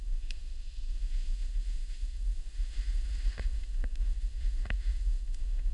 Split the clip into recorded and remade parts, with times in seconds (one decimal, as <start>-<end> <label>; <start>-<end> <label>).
0.0-5.7 remade